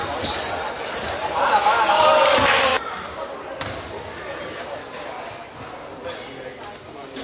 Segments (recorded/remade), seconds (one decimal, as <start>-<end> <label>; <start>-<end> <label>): 0.0-7.2 recorded